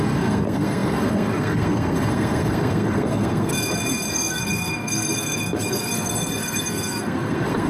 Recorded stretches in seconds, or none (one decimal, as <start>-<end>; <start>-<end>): 3.5-4.1